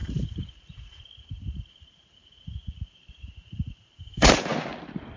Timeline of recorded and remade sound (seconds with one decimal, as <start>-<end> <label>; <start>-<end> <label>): 0.0-4.5 remade; 4.5-5.2 recorded